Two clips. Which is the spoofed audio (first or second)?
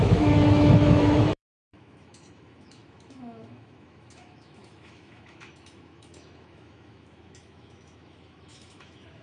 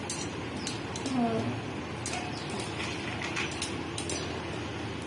first